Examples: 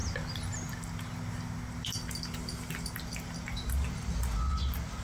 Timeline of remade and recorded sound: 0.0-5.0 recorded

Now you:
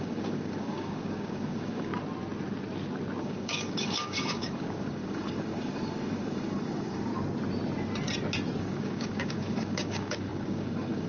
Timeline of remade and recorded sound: 0.0-1.9 remade; 1.9-3.2 recorded; 3.2-7.1 remade; 7.1-8.6 recorded; 8.6-11.1 remade

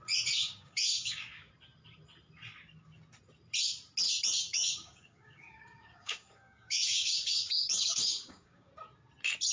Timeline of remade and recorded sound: 0.0-0.4 recorded; 0.4-1.5 remade; 1.5-4.4 recorded; 4.4-8.7 remade; 8.7-9.5 recorded

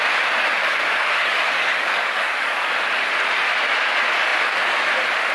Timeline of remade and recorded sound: 0.0-0.7 recorded; 0.7-2.7 remade; 2.7-5.3 recorded

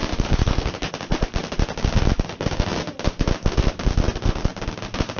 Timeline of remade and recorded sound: 0.0-0.9 remade; 0.9-5.2 recorded